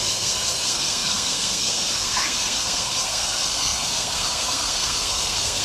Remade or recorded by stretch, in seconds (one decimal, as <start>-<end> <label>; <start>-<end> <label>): 0.0-5.6 remade